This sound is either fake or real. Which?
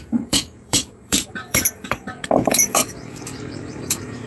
fake